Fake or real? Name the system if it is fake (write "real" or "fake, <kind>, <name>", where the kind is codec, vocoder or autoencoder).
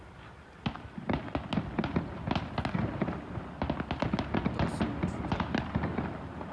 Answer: real